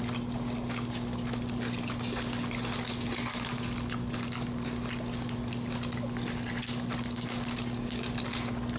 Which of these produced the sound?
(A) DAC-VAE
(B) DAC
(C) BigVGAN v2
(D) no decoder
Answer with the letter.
D